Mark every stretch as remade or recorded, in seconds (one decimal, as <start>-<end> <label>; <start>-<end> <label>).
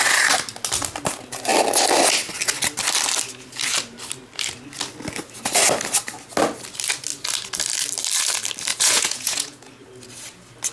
0.0-8.7 recorded; 8.7-9.7 remade; 9.7-10.7 recorded